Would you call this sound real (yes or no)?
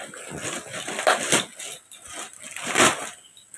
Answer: yes